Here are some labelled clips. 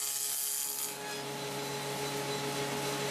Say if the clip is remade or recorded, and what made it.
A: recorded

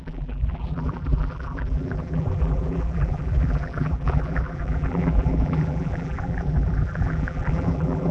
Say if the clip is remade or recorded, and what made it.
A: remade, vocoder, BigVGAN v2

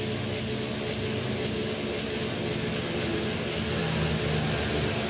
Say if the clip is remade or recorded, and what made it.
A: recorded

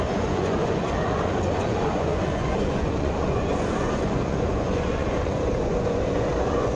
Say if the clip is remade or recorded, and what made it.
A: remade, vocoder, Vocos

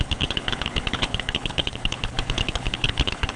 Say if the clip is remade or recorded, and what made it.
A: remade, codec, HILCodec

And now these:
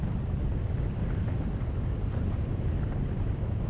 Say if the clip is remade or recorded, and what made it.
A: recorded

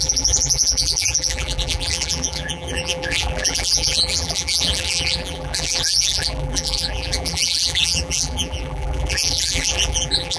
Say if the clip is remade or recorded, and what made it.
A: remade, vocoder, BigVGAN v2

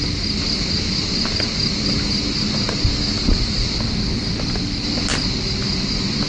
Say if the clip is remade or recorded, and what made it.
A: recorded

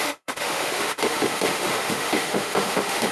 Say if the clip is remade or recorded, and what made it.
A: remade, autoencoder, DAC-VAE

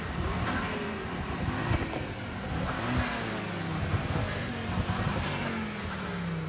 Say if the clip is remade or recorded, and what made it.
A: recorded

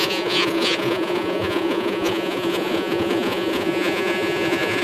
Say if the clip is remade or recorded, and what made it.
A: remade, vocoder, Vocos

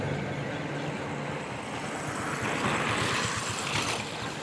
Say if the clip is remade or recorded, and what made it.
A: recorded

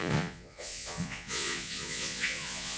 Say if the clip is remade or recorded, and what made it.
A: remade, vocoder, Vocos